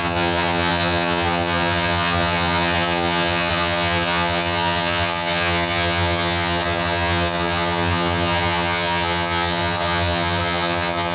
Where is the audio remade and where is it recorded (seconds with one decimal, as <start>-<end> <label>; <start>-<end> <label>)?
0.0-11.1 remade